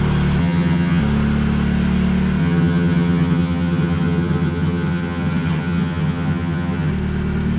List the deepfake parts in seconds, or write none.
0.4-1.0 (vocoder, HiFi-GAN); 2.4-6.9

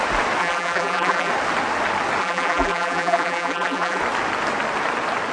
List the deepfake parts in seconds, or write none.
0.4-1.3 (vocoder, BigVGAN v2); 2.2-4.0

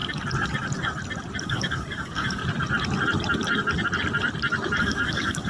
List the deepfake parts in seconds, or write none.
1.4-2.4 (codec, DAC); 4.8-5.5